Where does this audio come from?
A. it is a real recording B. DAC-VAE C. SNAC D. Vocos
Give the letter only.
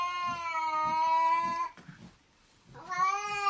A